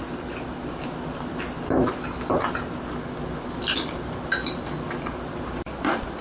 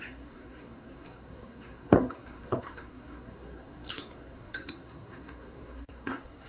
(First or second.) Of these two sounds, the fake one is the second